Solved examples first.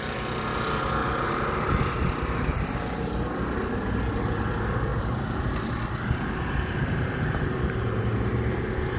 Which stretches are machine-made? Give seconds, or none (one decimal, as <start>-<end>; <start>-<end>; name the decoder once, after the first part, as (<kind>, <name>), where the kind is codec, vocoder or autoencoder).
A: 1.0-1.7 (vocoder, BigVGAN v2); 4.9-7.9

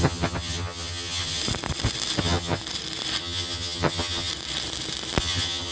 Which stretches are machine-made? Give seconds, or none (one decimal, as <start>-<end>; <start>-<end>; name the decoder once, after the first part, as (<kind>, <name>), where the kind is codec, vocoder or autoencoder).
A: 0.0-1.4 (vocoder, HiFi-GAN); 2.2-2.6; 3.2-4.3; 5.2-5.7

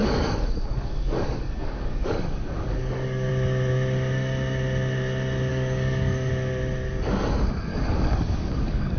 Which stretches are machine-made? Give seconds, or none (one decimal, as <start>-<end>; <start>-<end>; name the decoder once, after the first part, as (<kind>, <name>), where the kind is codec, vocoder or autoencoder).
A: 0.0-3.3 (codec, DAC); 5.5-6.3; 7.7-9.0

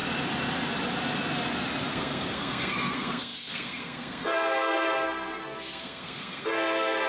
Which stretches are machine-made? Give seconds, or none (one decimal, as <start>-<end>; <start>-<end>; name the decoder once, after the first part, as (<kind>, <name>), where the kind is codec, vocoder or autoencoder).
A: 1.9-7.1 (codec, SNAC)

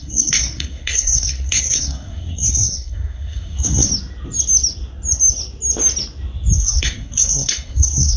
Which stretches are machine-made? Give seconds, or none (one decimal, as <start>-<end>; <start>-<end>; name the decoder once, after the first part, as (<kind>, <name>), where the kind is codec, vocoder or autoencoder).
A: 0.0-3.9 (codec, SNAC); 6.6-8.2

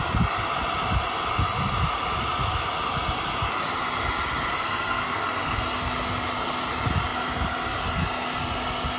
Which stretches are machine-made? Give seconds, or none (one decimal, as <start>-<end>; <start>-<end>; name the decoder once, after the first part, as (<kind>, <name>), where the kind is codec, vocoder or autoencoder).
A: 4.5-5.6 (codec, SNAC)